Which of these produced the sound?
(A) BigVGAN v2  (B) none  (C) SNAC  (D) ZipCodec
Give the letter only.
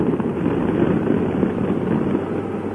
B